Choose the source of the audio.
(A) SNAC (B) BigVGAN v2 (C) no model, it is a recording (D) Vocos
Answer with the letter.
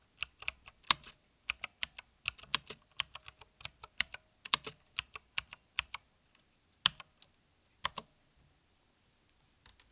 C